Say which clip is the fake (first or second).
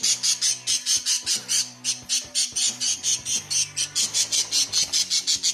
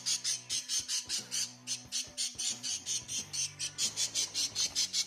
second